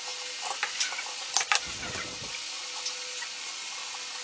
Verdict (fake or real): real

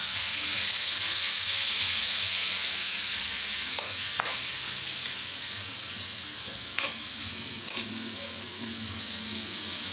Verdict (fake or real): fake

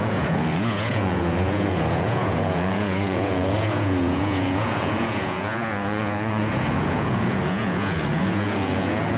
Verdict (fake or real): fake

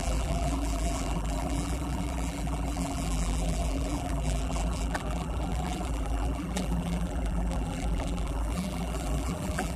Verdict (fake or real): fake